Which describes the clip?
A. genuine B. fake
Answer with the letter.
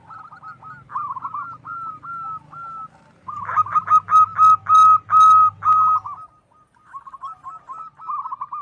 A